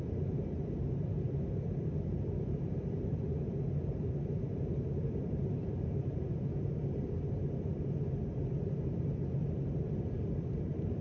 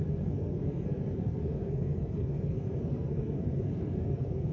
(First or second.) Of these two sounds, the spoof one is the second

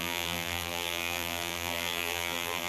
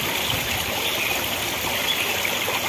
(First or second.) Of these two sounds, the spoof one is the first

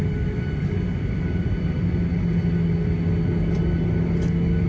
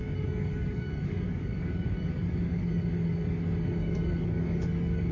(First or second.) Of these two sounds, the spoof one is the second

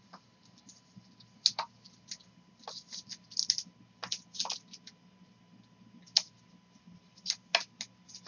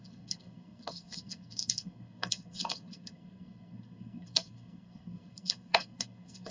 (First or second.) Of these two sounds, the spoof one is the second